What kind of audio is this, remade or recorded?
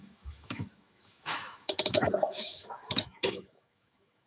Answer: remade